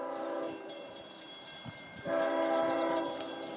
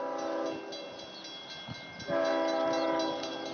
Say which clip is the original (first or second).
second